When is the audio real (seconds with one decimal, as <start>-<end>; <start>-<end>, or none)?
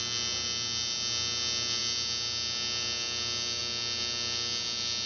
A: 0.0-5.1